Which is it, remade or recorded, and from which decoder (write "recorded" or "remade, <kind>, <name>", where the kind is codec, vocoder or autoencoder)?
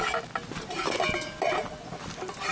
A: recorded